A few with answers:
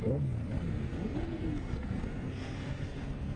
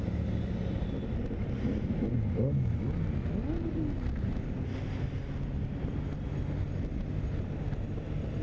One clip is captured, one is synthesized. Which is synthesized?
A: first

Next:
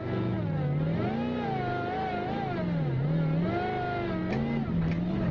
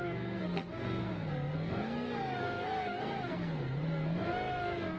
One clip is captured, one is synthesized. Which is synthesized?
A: second